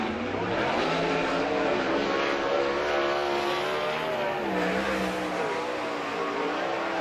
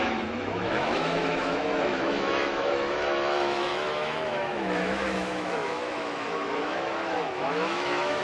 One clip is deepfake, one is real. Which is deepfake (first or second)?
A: second